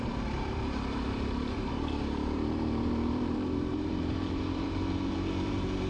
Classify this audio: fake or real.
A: fake